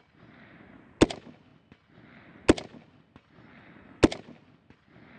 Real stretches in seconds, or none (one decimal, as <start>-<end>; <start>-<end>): 0.0-5.2